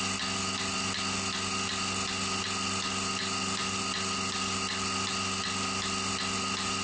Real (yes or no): yes